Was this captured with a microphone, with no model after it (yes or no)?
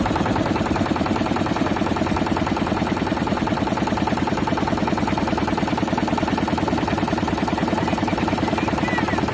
yes